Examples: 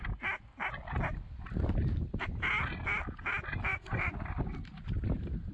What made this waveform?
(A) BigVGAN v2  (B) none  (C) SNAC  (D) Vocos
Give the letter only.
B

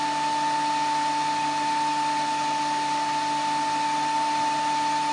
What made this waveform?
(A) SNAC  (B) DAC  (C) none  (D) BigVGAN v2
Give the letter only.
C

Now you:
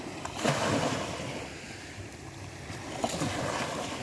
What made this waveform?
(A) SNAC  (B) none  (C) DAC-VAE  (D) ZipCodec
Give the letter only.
B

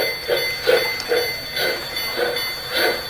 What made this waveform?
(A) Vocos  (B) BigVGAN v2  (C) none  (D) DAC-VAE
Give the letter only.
C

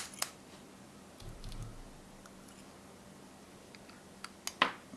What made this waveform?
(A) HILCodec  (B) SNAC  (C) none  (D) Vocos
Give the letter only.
C